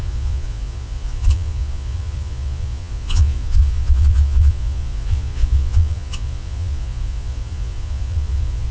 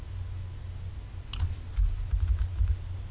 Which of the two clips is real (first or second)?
second